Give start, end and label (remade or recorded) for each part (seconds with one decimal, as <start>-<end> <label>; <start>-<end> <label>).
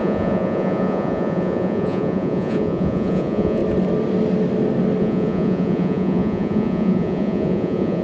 0.0-3.6 remade; 3.6-5.0 recorded; 5.0-8.0 remade